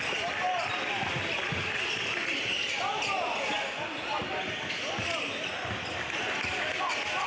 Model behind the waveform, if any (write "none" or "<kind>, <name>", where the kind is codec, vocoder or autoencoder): none